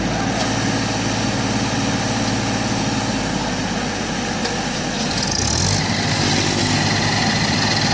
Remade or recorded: recorded